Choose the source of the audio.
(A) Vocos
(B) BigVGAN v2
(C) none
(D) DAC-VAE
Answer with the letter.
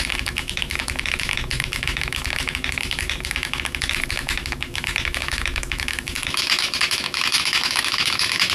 D